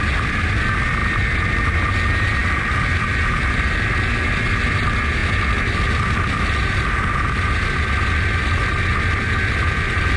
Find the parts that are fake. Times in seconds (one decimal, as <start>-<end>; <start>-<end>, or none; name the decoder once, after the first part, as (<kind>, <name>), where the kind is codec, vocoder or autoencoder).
1.0-1.9 (vocoder, BigVGAN v2); 2.4-3.9